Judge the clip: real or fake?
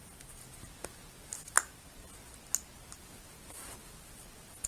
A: real